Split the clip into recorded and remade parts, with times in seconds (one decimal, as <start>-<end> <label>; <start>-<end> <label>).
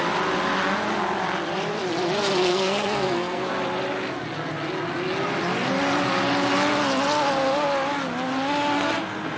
0.0-2.5 recorded; 2.5-3.5 remade; 3.5-9.4 recorded